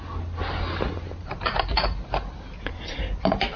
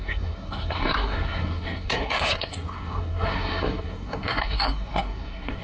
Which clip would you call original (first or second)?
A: first